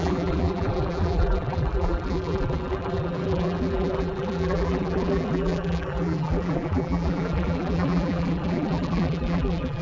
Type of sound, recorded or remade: remade